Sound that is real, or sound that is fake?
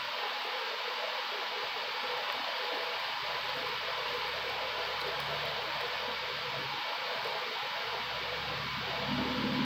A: real